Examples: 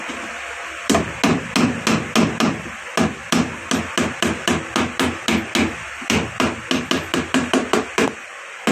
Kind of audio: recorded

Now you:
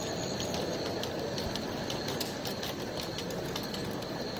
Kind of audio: recorded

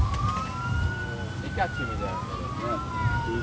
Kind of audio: recorded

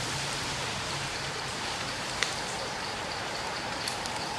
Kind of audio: remade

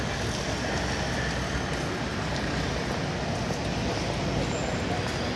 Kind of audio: recorded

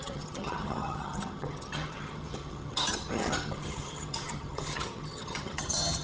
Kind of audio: remade